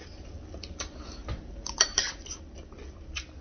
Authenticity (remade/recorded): recorded